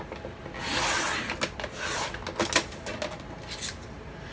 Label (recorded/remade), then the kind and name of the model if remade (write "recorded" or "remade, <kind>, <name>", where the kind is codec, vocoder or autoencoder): recorded